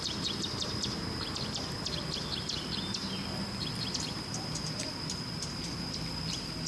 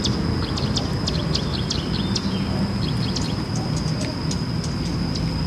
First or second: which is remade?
first